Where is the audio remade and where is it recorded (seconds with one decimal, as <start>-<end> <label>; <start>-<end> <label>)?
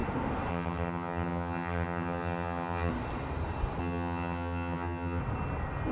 0.0-0.5 recorded; 0.5-2.9 remade; 2.9-3.8 recorded; 3.8-5.2 remade; 5.2-5.9 recorded